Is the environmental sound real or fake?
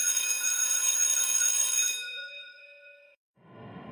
fake